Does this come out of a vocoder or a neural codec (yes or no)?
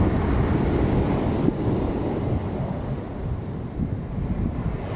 no